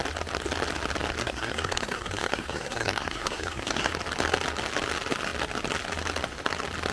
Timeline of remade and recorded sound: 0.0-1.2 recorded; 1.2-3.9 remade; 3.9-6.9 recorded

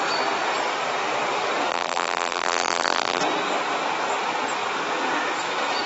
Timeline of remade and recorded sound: 0.0-1.7 recorded; 1.7-3.2 remade; 3.2-5.9 recorded

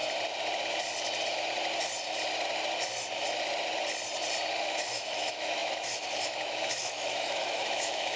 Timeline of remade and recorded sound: 0.0-4.6 recorded; 4.6-8.2 remade

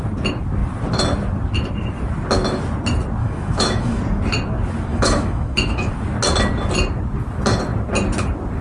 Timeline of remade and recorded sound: 0.0-3.2 recorded; 3.2-4.0 remade; 4.0-4.9 recorded; 4.9-5.9 remade; 5.9-8.6 recorded

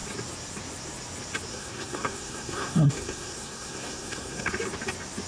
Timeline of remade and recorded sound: 0.0-1.5 recorded; 1.5-4.5 remade; 4.5-5.3 recorded

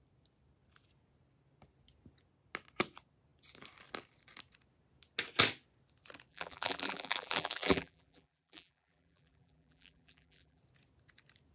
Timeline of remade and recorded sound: 0.0-6.3 recorded; 6.3-10.6 remade; 10.6-11.5 recorded